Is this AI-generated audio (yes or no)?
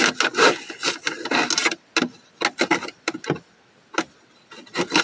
no